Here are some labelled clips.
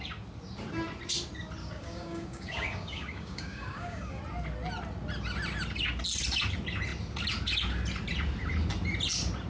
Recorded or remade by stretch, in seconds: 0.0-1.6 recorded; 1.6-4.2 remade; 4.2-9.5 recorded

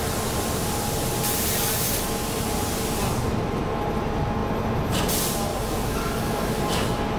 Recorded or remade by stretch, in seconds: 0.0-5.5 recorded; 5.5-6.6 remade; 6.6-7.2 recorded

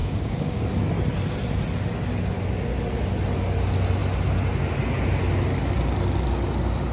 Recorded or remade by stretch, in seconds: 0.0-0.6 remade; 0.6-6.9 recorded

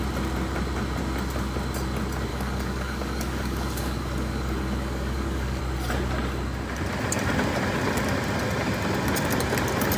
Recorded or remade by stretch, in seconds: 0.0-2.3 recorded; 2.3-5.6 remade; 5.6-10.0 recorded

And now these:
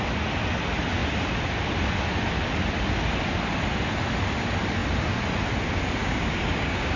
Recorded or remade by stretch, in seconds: 0.0-6.0 recorded; 6.0-7.0 remade

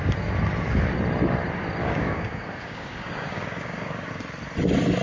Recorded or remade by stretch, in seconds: 0.0-1.8 recorded; 1.8-4.1 remade; 4.1-5.0 recorded

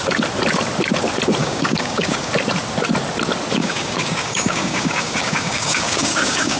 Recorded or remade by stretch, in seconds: 0.0-1.4 recorded; 1.4-2.3 remade; 2.3-3.6 recorded; 3.6-6.6 remade